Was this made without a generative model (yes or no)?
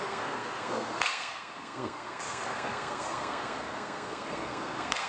no